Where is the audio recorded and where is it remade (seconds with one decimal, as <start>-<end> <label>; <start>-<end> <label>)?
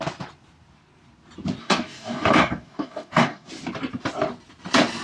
0.0-1.6 recorded; 1.6-3.5 remade; 3.5-5.0 recorded